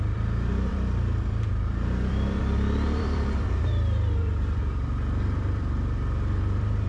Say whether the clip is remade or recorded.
remade